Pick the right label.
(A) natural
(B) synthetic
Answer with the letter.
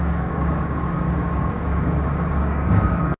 B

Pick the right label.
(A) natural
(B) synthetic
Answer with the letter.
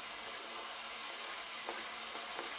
A